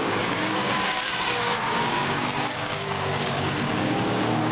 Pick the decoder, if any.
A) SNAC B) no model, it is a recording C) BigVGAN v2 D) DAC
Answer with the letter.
D